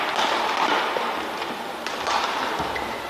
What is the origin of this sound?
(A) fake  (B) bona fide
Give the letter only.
B